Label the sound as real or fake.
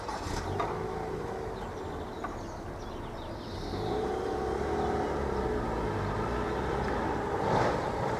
real